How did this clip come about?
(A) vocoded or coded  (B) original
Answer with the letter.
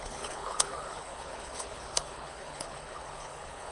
A